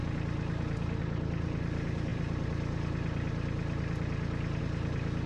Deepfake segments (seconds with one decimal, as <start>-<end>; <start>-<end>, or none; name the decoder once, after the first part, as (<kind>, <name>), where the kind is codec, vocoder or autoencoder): none